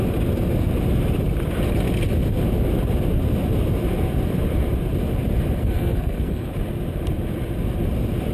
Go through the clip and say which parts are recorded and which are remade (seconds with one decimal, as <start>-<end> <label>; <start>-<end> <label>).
0.0-5.6 recorded; 5.6-6.5 remade; 6.5-8.3 recorded